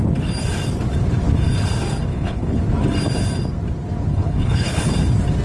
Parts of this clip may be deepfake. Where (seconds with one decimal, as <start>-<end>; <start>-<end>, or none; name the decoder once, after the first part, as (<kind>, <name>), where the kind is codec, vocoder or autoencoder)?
2.1-2.6 (codec, HILCodec); 4.1-4.9